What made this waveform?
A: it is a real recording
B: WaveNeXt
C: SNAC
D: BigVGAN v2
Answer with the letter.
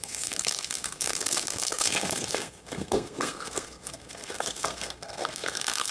C